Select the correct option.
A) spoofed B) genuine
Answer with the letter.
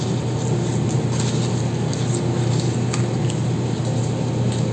B